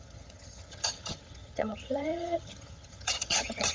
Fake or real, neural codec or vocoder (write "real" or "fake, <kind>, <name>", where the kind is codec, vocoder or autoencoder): fake, vocoder, HiFi-GAN